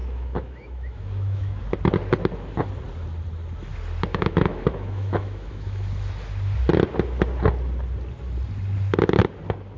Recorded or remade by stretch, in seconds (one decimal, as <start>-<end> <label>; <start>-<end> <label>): 0.0-1.6 remade; 1.6-4.1 recorded; 4.1-5.9 remade; 5.9-9.8 recorded